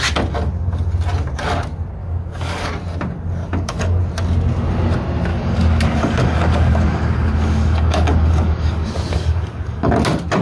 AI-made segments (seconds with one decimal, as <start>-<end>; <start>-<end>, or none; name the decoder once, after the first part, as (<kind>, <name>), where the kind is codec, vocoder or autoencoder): 2.0-2.7 (codec, DAC); 3.4-4.0; 5.3-9.9